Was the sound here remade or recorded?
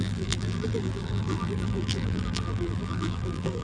remade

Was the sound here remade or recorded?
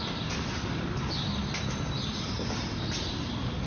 recorded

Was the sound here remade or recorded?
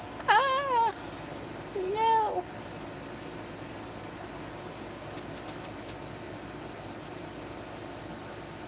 recorded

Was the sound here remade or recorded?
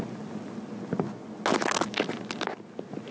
recorded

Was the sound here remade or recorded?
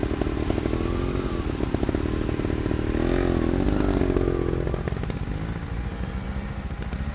recorded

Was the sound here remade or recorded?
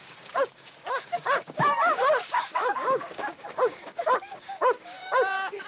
remade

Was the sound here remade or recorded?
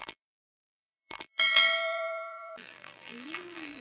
remade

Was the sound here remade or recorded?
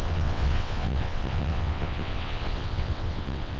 remade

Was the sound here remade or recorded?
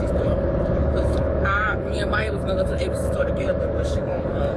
remade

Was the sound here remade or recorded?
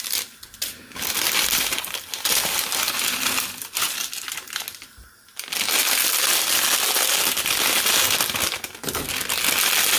recorded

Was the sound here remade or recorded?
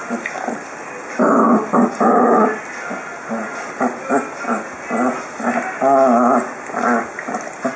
recorded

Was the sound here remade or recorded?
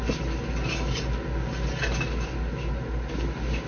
recorded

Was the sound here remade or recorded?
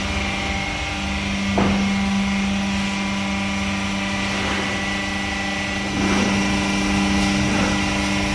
recorded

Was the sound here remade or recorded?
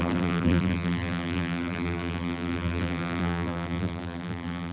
remade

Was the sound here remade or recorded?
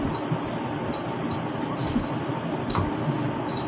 recorded